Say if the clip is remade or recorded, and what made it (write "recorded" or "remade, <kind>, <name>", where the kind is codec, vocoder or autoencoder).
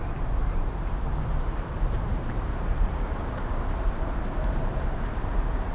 remade, vocoder, BigVGAN v2